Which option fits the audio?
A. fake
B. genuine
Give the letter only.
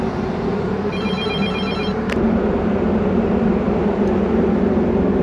A